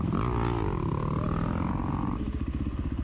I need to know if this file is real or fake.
real